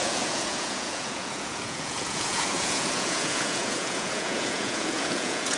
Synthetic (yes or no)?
yes